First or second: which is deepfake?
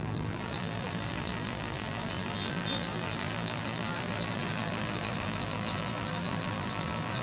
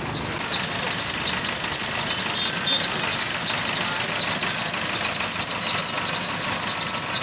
first